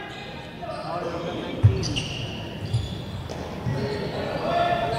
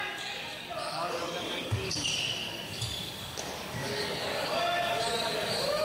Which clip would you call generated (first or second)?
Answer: second